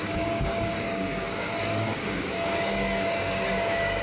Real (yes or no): no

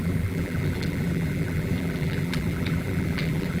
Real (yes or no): no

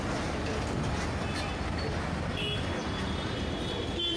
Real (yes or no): yes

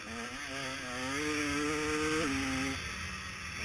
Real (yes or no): yes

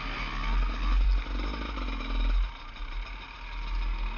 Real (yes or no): yes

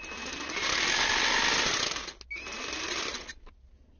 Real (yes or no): yes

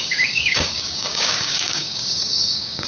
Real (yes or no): no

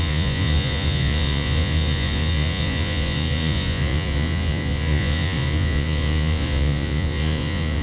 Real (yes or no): no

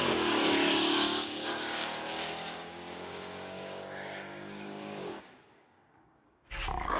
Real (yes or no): no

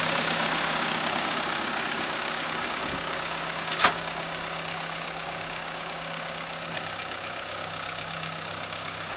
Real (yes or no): no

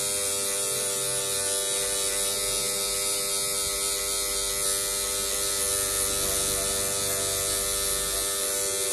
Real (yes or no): yes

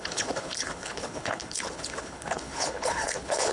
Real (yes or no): no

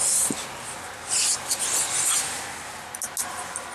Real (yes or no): yes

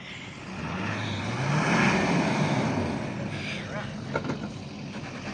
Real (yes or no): yes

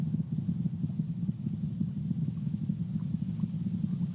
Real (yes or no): yes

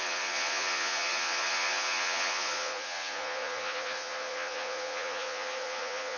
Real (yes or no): no